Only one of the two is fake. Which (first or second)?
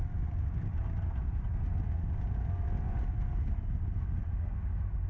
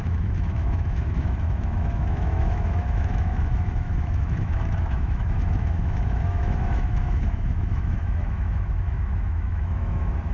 second